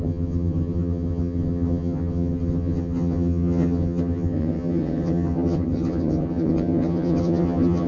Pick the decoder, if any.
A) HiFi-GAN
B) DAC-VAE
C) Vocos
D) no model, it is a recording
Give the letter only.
A